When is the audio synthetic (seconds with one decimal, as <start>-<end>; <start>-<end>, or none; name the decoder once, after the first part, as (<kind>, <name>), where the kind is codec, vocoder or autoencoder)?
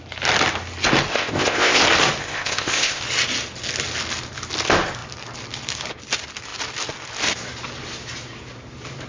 1.1-1.8 (codec, ZipCodec); 2.2-3.0